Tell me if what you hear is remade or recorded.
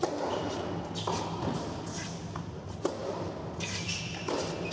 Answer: recorded